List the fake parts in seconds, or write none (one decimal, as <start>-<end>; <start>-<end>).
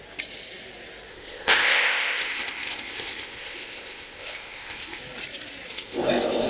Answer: 1.1-5.0; 5.7-6.5